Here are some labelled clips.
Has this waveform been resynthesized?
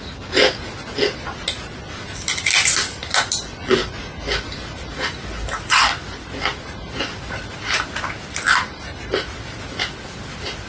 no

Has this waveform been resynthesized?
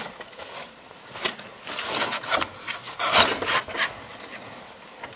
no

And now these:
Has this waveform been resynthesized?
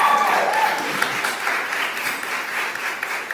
no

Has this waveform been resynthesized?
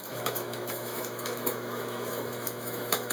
yes